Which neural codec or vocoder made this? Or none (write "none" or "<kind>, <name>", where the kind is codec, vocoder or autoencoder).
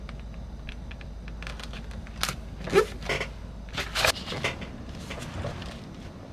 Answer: none